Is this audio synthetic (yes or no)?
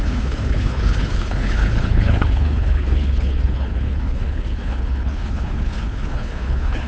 yes